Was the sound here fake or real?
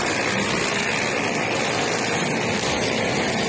fake